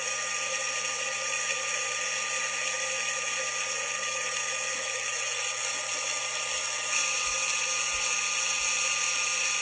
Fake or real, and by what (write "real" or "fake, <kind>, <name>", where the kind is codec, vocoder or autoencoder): real